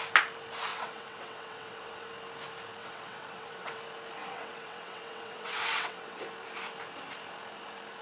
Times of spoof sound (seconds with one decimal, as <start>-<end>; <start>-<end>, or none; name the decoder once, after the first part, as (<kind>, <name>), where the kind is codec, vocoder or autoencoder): 0.7-2.1 (vocoder, WaveNeXt); 2.8-3.8; 4.2-6.2